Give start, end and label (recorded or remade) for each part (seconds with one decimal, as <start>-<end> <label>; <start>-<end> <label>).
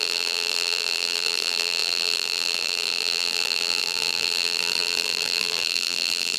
0.0-6.4 remade